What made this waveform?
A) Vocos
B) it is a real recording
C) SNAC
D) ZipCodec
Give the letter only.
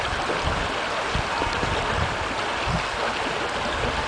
B